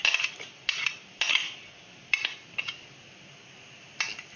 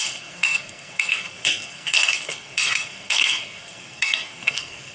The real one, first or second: first